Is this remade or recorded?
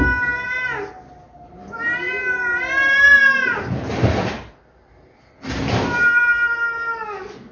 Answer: recorded